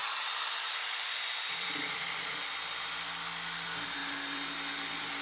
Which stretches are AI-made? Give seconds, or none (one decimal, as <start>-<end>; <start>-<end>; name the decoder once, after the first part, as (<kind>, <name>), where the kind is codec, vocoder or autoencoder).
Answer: 0.0-2.2 (vocoder, BigVGAN v2)